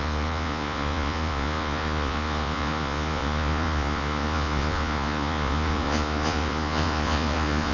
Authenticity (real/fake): fake